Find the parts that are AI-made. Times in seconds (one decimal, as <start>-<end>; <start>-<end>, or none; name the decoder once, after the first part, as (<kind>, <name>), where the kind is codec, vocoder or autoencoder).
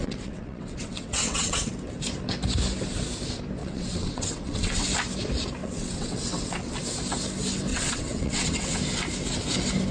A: 0.0-1.7 (vocoder, WaveNeXt); 3.6-4.9; 5.6-6.7; 7.7-8.8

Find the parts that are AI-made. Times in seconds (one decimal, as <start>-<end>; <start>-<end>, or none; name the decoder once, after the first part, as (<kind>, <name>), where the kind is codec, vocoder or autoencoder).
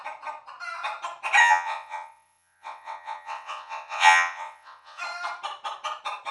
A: 1.4-5.0 (vocoder, WaveNeXt)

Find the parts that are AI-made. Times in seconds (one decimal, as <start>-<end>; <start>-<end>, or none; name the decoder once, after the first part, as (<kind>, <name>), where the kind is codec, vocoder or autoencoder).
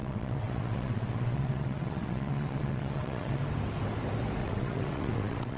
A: 0.0-3.4 (vocoder, WaveNeXt); 4.4-5.6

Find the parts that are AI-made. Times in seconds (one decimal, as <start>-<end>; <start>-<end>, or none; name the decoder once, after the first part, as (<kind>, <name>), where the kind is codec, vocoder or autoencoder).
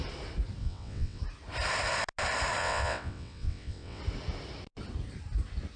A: 0.6-1.2 (vocoder, WaveNeXt); 2.6-4.0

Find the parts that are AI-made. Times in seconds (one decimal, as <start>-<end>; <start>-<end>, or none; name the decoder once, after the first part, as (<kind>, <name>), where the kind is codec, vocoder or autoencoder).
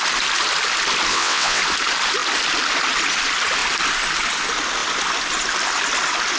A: 1.1-1.6 (vocoder, WaveNeXt)